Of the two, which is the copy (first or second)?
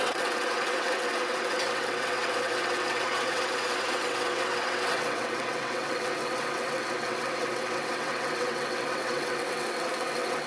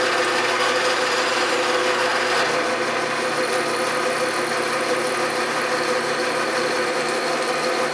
first